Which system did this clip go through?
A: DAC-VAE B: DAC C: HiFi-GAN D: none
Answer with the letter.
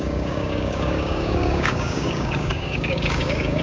B